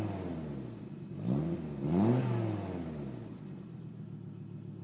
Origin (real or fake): real